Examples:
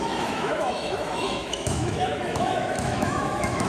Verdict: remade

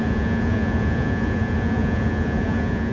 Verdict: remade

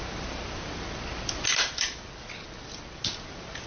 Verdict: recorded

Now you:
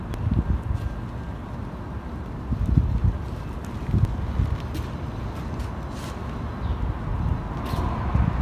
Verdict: recorded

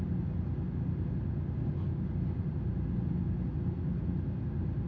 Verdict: recorded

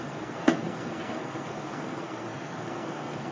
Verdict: remade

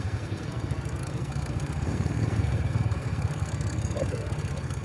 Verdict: remade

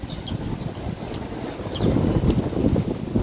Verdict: recorded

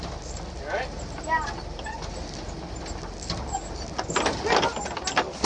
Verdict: recorded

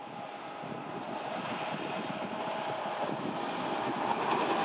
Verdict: recorded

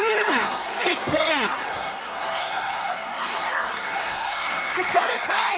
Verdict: remade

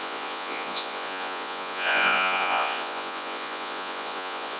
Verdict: remade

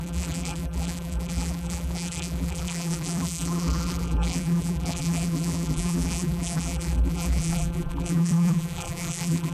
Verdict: remade